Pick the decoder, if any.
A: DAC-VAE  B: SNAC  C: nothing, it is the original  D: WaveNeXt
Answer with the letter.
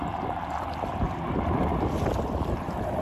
C